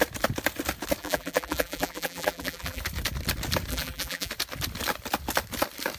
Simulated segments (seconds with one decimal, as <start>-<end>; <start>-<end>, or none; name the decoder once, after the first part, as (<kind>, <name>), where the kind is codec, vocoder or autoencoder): 1.0-2.8 (vocoder, BigVGAN v2); 3.7-4.3